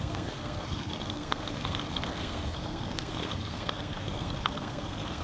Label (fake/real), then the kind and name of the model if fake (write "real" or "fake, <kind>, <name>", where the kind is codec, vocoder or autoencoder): fake, codec, SNAC